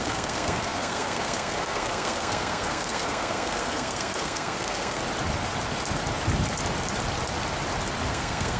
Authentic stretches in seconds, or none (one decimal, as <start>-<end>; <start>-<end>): 5.0-8.1